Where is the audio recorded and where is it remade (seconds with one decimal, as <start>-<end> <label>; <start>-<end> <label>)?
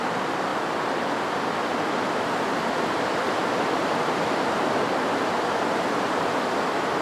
0.0-7.0 recorded